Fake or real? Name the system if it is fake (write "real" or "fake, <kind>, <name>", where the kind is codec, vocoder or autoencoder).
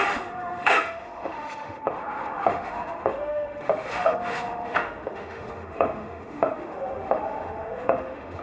fake, autoencoder, DAC-VAE